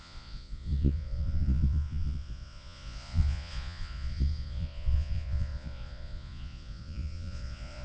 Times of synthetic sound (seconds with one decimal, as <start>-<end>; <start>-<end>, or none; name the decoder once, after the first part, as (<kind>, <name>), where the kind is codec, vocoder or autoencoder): 0.0-7.8 (vocoder, Vocos)